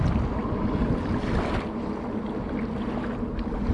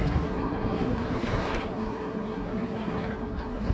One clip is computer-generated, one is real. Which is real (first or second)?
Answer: first